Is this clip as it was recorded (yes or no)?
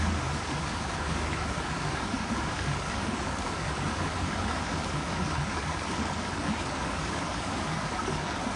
no